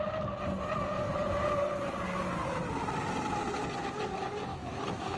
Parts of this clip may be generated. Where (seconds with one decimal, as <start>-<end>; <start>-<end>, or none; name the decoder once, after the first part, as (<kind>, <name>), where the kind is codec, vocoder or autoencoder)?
4.5-5.2 (autoencoder, DAC-VAE)

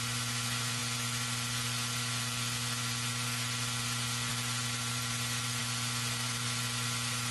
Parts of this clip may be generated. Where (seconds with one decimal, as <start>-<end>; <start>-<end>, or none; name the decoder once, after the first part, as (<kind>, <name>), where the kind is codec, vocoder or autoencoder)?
0.0-0.8 (vocoder, BigVGAN v2); 4.3-7.3

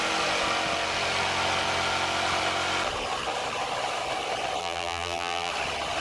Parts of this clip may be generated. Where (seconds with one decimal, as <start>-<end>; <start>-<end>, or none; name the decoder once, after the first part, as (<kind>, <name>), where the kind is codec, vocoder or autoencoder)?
4.6-5.5 (vocoder, BigVGAN v2)

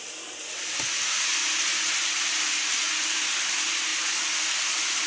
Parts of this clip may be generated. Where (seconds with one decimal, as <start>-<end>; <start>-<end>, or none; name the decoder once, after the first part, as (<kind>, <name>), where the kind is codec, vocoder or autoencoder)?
none

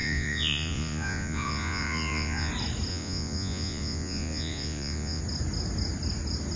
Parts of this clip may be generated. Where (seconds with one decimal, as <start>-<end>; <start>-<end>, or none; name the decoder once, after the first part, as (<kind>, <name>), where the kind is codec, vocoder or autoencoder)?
0.0-2.5 (vocoder, Vocos); 2.9-5.2